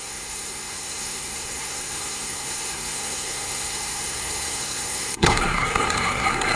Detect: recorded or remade remade